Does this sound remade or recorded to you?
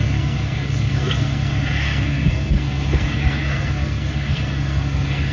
remade